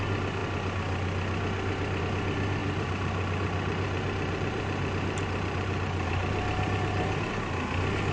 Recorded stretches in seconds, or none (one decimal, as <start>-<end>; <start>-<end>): 0.0-2.6; 7.3-8.1